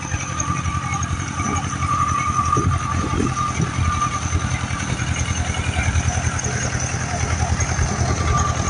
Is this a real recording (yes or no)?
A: yes